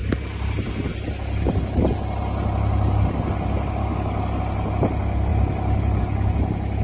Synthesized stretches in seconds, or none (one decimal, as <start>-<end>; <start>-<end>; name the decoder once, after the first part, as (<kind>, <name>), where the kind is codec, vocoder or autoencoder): 3.8-4.4 (codec, DAC)